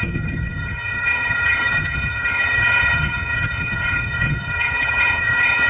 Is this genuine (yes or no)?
no